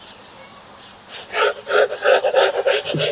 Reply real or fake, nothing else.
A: real